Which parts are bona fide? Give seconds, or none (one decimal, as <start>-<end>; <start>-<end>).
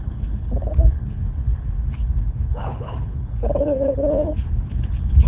none